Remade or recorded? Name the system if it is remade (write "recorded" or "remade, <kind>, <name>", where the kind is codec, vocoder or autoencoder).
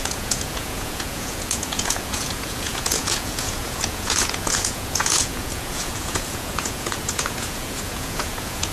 remade, vocoder, Vocos